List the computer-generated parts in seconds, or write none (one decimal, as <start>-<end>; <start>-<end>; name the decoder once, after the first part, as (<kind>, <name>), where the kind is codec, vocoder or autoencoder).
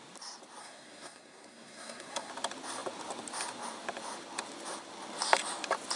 0.6-2.3 (codec, SNAC)